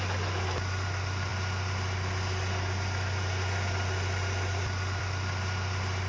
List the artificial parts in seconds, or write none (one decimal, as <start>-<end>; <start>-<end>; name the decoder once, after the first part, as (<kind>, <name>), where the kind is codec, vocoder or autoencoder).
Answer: none

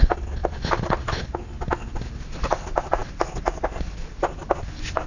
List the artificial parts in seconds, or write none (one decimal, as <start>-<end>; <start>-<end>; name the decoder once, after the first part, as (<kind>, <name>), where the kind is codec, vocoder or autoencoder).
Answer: none

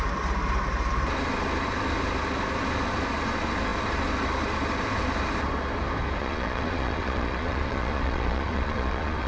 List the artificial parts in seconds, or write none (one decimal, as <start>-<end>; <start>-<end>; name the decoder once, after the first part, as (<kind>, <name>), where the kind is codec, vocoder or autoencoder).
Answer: 6.2-9.3 (vocoder, Vocos)

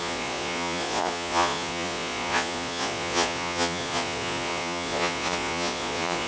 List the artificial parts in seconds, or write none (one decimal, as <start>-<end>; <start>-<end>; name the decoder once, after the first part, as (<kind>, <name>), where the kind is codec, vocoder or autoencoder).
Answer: 0.0-6.3 (vocoder, Vocos)

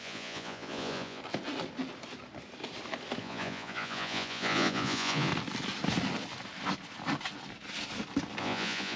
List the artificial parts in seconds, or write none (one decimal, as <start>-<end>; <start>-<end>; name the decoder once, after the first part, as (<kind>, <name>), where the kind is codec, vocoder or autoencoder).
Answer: 0.0-1.2 (vocoder, Vocos); 3.2-5.3; 8.4-9.0